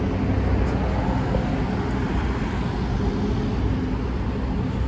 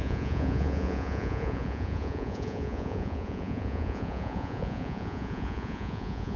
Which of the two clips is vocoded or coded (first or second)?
second